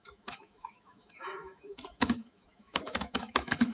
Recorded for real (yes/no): no